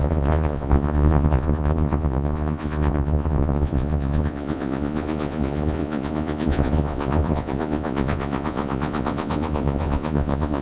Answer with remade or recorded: remade